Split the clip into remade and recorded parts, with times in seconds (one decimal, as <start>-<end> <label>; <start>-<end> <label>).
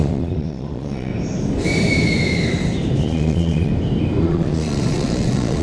0.0-1.1 remade; 1.1-3.0 recorded; 3.0-3.7 remade; 3.7-4.2 recorded; 4.2-5.6 remade